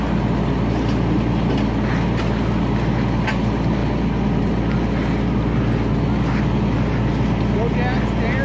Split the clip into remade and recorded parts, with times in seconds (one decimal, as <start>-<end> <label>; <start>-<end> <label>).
0.0-8.4 recorded